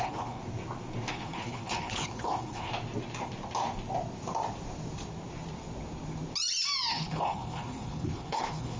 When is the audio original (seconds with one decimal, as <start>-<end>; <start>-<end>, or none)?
0.4-1.1; 2.7-6.9